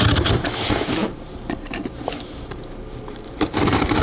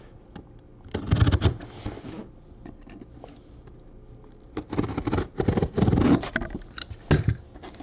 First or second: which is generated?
first